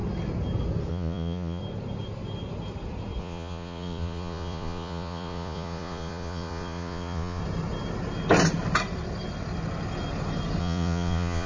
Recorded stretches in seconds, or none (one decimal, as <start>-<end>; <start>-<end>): 0.0-0.9; 1.6-3.2; 7.4-10.6